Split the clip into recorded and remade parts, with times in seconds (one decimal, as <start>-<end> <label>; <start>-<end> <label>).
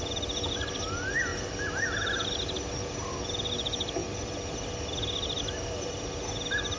0.0-6.8 recorded